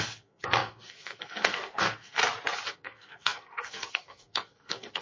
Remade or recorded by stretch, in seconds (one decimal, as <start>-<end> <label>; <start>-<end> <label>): 0.0-2.2 remade; 2.2-2.7 recorded; 2.7-5.0 remade